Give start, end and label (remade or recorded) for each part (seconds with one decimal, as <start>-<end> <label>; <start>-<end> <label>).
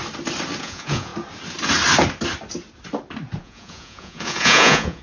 0.0-0.6 recorded; 0.6-1.1 remade; 1.1-3.4 recorded; 3.4-5.0 remade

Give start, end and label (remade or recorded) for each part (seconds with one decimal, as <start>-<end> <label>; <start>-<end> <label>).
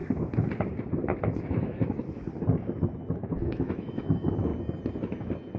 0.0-1.2 recorded; 1.2-2.0 remade; 2.0-3.4 recorded; 3.4-4.5 remade; 4.5-5.6 recorded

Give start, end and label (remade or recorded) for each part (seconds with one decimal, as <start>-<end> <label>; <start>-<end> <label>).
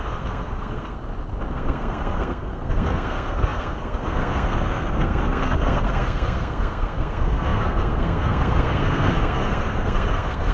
0.0-1.0 remade; 1.0-1.5 recorded; 1.5-10.5 remade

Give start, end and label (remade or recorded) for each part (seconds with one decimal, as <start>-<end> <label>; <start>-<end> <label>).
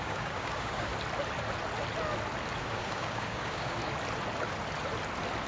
0.0-0.9 remade; 0.9-2.6 recorded; 2.6-3.8 remade; 3.8-5.5 recorded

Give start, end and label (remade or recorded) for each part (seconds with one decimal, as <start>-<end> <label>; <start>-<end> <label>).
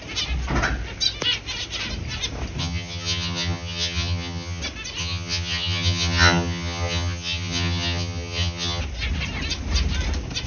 0.0-2.6 recorded; 2.6-4.6 remade; 4.6-5.0 recorded; 5.0-8.8 remade; 8.8-10.5 recorded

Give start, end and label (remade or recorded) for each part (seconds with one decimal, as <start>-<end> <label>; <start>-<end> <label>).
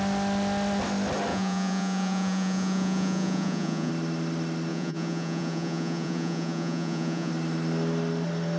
0.0-1.3 recorded; 1.3-3.9 remade; 3.9-4.7 recorded; 4.7-7.3 remade; 7.3-8.6 recorded